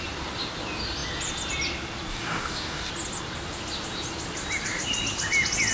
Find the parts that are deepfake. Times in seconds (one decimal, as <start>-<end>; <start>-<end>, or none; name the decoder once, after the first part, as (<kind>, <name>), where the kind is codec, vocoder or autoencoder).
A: 2.1-2.9 (codec, DAC)